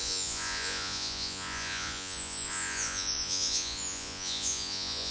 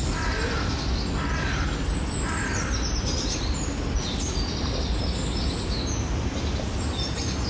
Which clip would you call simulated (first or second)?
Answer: first